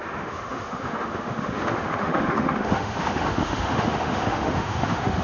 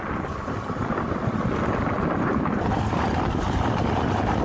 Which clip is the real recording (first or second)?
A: second